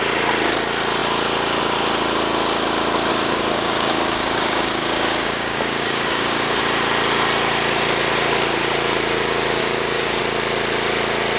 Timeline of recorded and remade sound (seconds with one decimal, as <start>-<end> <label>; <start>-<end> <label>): 0.0-3.1 recorded; 3.1-6.6 remade; 6.6-9.6 recorded; 9.6-10.2 remade; 10.2-11.4 recorded